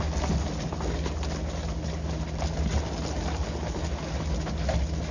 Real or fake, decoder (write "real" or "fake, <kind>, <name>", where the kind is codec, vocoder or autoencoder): real